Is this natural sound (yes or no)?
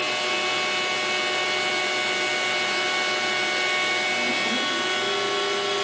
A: yes